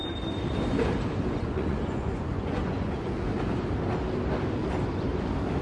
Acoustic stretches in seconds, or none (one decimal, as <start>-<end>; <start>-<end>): 0.0-1.2; 3.3-5.6